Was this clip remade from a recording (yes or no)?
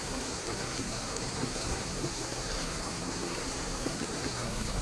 yes